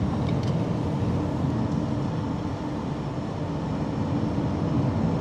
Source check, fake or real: real